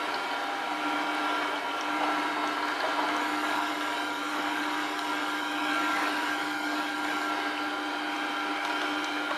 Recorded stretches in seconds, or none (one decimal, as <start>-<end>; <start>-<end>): 0.0-3.2; 7.3-9.4